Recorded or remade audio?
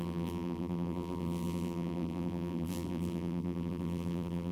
remade